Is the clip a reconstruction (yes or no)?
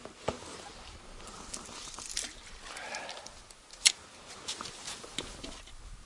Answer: no